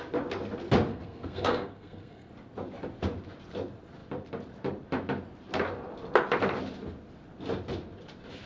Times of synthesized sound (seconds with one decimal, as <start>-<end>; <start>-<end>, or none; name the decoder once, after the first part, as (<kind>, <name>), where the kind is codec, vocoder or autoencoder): 0.9-2.3 (codec, SNAC)